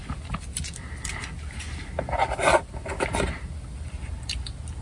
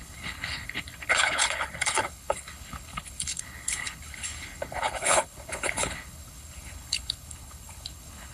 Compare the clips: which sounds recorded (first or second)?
first